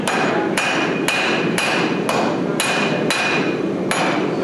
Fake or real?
real